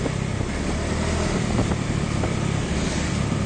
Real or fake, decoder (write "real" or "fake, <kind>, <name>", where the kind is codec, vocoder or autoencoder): real